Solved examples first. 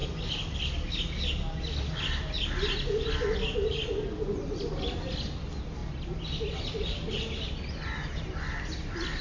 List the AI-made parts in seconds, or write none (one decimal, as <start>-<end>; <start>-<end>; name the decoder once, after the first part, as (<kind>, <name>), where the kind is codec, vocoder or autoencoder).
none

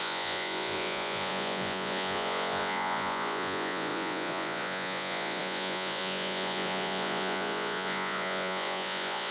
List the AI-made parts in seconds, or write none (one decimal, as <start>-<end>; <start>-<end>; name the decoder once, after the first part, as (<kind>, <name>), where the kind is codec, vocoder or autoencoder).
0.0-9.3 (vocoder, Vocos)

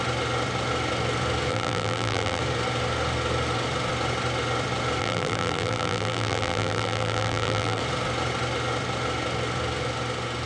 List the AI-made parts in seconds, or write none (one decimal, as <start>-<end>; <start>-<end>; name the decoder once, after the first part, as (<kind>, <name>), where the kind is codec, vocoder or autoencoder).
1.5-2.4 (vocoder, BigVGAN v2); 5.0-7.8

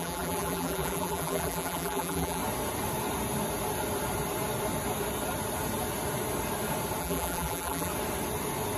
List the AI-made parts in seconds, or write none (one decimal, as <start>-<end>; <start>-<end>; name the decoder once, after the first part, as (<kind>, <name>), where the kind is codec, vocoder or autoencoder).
0.0-2.4 (vocoder, BigVGAN v2); 7.0-7.9